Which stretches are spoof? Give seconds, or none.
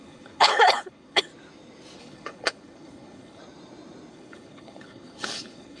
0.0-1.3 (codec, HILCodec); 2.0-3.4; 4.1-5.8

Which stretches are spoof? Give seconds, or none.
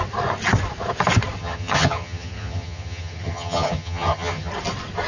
1.4-4.5 (vocoder, HiFi-GAN)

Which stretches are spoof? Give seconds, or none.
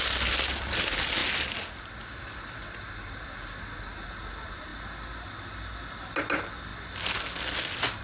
none